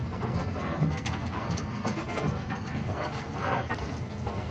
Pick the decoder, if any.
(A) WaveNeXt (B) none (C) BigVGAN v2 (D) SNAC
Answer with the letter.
D